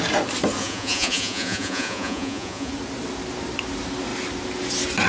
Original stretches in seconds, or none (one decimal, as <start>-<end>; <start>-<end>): 0.0-0.6; 2.7-5.1